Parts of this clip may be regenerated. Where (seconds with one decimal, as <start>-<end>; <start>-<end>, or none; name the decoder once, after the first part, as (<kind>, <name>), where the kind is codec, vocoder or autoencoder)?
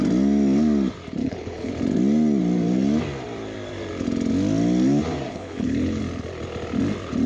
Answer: 1.2-1.7 (codec, HILCodec); 5.3-6.0